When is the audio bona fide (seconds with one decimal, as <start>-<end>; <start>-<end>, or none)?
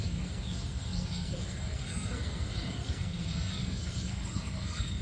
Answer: none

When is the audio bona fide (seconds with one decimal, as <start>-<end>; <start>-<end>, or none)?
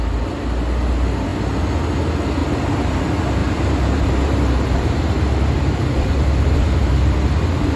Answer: 0.0-2.4; 3.0-3.4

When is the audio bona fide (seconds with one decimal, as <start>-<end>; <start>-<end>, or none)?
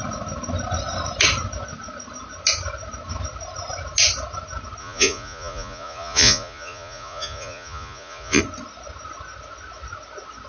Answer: 0.0-4.8; 8.4-10.5